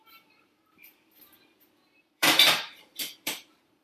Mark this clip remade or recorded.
remade